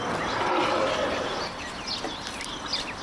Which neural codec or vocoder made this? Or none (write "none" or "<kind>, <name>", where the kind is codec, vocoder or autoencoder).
none